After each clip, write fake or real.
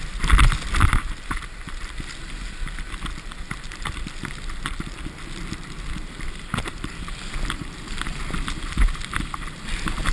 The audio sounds fake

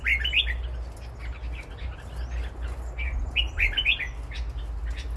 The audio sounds real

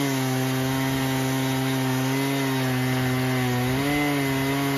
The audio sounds real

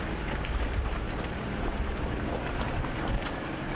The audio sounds fake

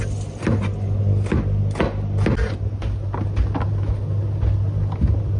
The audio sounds real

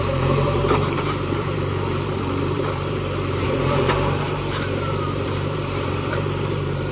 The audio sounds fake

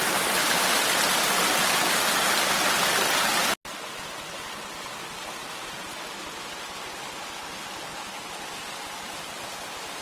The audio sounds real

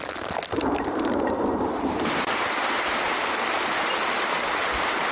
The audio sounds fake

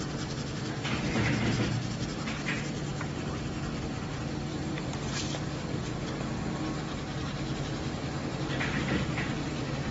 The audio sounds real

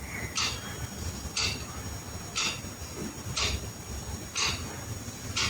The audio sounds real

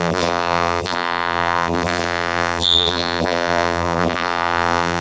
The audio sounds fake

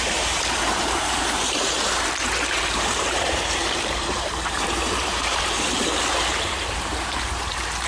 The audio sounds fake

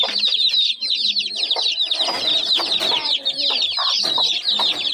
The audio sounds fake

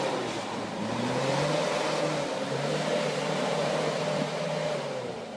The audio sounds fake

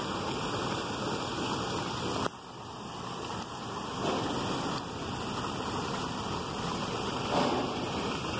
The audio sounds fake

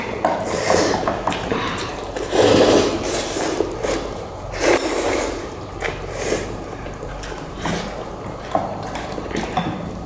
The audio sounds fake